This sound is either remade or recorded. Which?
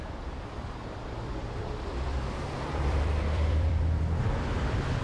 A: remade